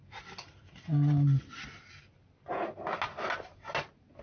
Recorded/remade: recorded